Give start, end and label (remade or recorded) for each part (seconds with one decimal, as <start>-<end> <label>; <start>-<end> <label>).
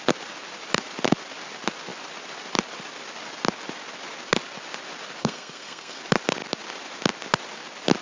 0.0-5.2 recorded; 5.2-6.0 remade; 6.0-8.0 recorded